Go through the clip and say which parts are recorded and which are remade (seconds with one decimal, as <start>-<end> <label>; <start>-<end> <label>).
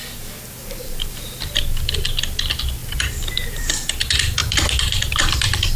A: 0.0-0.6 recorded; 0.6-1.6 remade; 1.6-2.8 recorded; 2.8-3.7 remade; 3.7-4.4 recorded; 4.4-5.8 remade